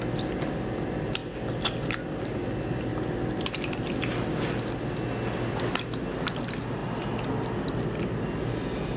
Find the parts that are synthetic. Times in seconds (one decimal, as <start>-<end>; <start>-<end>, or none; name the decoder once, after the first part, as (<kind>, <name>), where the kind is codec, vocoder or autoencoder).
none